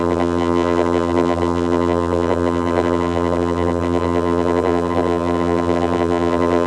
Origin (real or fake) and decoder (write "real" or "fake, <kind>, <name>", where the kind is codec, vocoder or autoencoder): fake, vocoder, BigVGAN v2